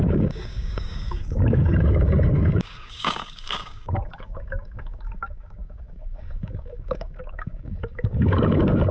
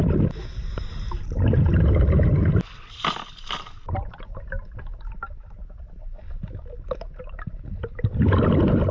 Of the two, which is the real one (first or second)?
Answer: second